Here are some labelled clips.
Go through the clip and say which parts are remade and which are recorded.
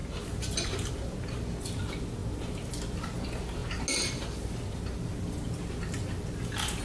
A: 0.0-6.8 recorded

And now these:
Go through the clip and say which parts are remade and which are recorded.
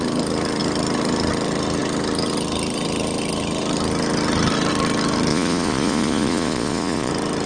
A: 0.0-5.3 recorded; 5.3-7.1 remade; 7.1-7.5 recorded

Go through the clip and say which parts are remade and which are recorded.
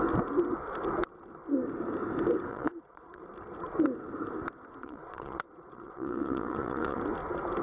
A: 0.0-2.5 recorded; 2.5-3.2 remade; 3.2-4.8 recorded; 4.8-7.0 remade; 7.0-7.6 recorded